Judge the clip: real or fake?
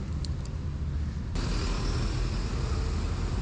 real